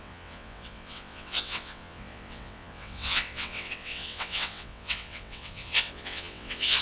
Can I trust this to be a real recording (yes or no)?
no